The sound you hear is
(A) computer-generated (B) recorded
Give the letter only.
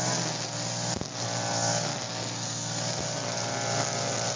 B